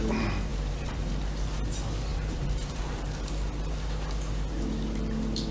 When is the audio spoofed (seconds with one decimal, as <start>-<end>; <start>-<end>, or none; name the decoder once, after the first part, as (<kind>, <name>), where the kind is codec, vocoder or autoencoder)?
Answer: 0.5-1.1 (vocoder, BigVGAN v2); 2.1-3.3

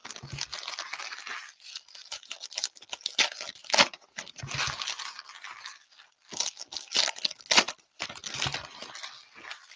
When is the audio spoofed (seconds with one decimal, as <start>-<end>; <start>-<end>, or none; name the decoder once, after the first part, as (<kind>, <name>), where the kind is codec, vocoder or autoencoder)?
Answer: 3.6-4.5 (vocoder, BigVGAN v2)